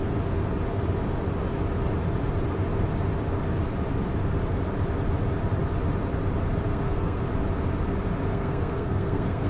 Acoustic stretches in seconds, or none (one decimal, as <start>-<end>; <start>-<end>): 0.0-6.7; 7.2-8.3

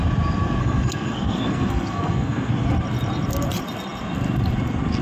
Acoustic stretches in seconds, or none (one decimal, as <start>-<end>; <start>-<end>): 0.0-0.6; 2.5-5.0